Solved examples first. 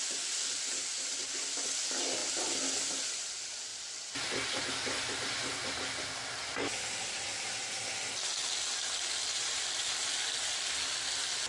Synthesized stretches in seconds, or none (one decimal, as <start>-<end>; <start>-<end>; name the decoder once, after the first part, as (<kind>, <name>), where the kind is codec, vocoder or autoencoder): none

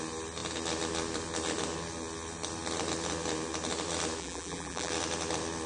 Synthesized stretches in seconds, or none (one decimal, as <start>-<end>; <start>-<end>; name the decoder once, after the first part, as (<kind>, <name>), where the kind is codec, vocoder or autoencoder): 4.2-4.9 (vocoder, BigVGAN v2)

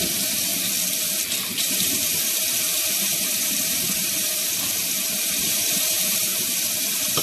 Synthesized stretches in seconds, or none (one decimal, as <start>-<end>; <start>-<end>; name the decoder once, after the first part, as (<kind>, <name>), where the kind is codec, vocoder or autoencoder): 0.0-0.5 (vocoder, BigVGAN v2); 1.6-7.2

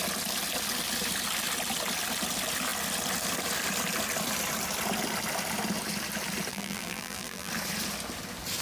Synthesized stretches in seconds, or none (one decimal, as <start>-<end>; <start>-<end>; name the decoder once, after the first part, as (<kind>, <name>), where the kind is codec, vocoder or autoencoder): 6.5-7.5 (vocoder, BigVGAN v2)

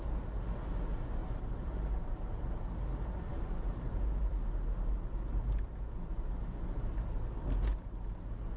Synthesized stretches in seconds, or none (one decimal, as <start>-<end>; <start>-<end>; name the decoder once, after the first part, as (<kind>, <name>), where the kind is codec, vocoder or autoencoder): 1.2-2.4 (vocoder, BigVGAN v2); 3.3-4.3